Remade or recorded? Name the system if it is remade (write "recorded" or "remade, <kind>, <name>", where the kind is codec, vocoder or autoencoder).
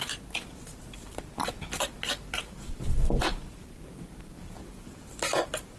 remade, vocoder, BigVGAN v2